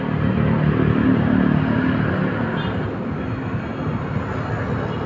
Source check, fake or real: real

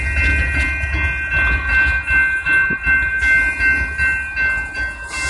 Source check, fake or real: real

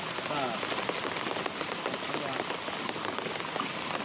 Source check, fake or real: real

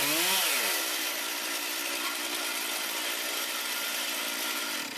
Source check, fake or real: real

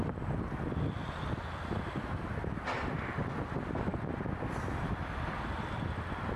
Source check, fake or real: real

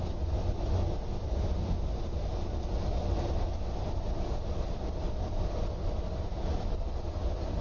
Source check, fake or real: real